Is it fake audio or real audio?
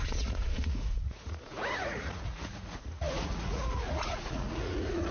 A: fake